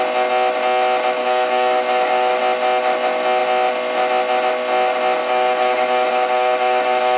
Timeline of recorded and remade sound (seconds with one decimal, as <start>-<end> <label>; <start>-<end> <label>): 0.0-1.2 recorded; 1.2-2.4 remade; 2.4-5.2 recorded; 5.2-7.2 remade

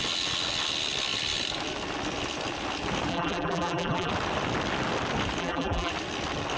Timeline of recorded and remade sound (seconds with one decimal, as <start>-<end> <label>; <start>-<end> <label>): 0.0-3.1 recorded; 3.1-4.1 remade; 4.1-5.4 recorded; 5.4-5.9 remade; 5.9-6.6 recorded

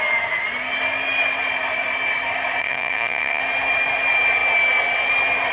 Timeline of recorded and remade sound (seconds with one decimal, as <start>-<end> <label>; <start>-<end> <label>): 0.0-2.6 recorded; 2.6-3.4 remade; 3.4-5.5 recorded

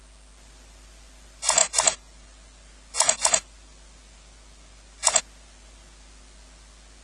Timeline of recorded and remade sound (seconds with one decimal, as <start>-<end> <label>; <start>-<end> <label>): 0.0-7.0 recorded

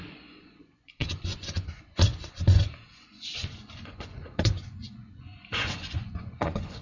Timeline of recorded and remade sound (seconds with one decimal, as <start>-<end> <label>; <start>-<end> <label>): 0.0-6.8 remade